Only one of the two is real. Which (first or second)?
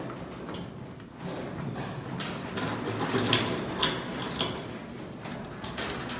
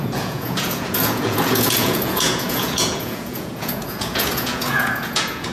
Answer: first